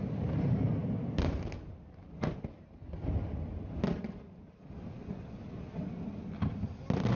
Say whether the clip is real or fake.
real